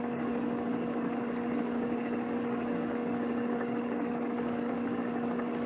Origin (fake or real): fake